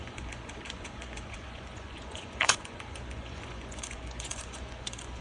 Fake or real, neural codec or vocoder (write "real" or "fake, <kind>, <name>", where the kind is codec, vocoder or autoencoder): fake, vocoder, Vocos